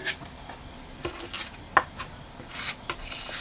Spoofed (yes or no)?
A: no